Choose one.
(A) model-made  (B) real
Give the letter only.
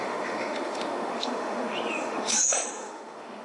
A